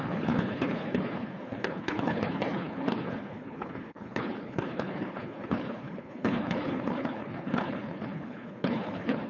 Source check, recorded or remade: remade